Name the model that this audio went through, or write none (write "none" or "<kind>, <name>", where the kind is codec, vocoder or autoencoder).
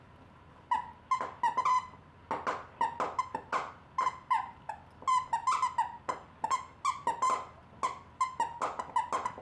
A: none